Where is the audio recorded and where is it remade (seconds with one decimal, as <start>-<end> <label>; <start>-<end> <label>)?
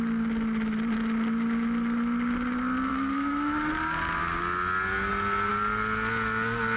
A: 0.0-2.9 recorded; 2.9-3.7 remade; 3.7-6.8 recorded